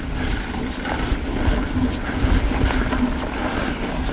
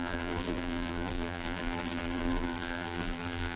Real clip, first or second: first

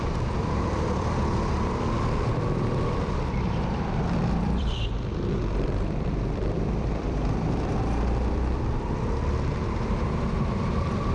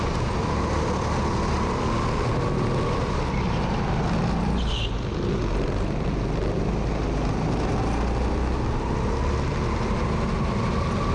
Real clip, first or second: second